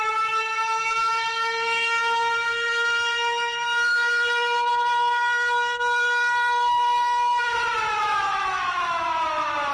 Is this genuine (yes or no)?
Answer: no